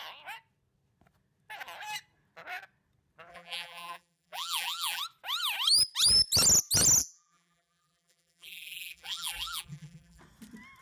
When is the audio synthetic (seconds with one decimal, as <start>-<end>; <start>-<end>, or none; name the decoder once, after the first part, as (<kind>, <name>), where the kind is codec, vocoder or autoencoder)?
3.3-5.0 (vocoder, BigVGAN v2); 7.0-10.2